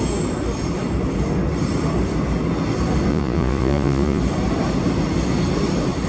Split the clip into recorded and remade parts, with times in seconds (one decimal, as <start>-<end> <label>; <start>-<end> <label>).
0.0-3.1 recorded; 3.1-4.2 remade; 4.2-6.1 recorded